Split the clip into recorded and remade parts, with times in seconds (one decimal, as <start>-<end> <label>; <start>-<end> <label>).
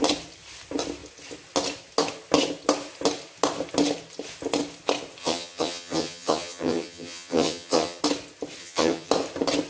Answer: 0.0-5.2 recorded; 5.2-8.0 remade; 8.0-8.6 recorded; 8.6-9.1 remade; 9.1-9.7 recorded